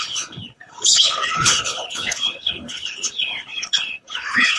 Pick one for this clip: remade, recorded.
remade